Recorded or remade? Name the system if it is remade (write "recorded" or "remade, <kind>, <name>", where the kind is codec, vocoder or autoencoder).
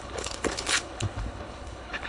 remade, codec, HILCodec